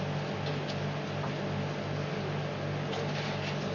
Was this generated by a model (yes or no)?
no